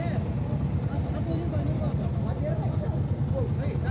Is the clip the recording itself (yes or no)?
yes